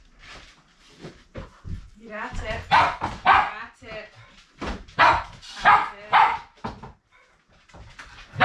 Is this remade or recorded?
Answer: recorded